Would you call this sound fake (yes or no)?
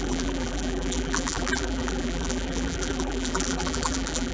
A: yes